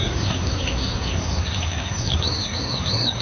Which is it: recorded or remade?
remade